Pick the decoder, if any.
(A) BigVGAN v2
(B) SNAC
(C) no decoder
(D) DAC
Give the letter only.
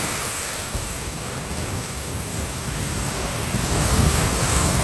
D